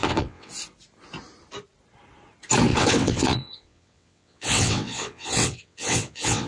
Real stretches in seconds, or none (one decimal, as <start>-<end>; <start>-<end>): 0.5-2.7